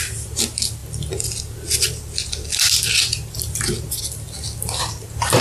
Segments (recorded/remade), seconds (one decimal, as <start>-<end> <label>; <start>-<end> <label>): 0.0-5.4 recorded